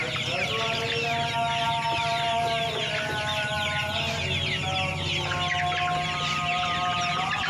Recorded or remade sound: recorded